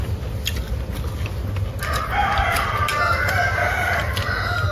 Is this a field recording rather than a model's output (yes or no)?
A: yes